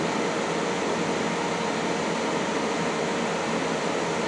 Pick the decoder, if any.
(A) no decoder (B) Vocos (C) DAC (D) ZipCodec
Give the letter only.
A